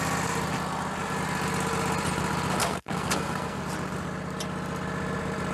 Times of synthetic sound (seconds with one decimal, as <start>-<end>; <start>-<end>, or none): 2.6-3.6

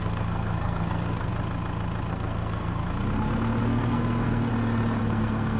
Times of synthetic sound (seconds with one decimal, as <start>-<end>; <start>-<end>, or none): 0.0-1.3; 2.1-2.8; 3.6-4.5; 5.0-5.6

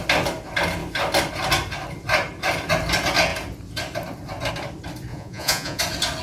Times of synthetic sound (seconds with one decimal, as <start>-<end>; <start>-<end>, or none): 5.1-5.8

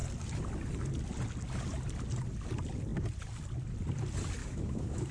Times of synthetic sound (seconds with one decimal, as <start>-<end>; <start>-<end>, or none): 4.4-5.1